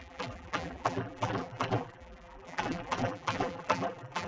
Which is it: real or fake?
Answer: fake